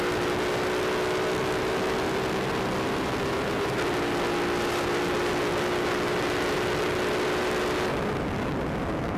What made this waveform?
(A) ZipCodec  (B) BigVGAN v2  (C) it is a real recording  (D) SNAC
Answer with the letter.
C